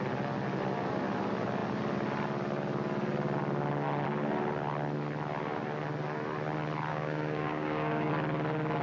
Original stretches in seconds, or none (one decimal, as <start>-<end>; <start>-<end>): 0.0-6.9; 8.1-8.8